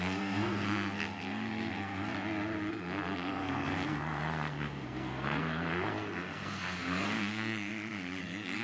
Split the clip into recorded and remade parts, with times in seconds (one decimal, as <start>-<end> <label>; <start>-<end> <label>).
0.0-2.1 remade; 2.1-2.7 recorded; 2.7-7.7 remade; 7.7-8.2 recorded; 8.2-8.6 remade